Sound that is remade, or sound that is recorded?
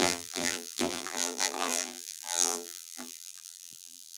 remade